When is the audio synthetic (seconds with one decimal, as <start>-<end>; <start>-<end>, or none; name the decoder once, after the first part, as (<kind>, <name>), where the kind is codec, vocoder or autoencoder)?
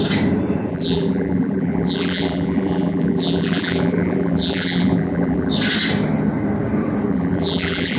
0.7-5.5 (vocoder, BigVGAN v2); 7.1-8.0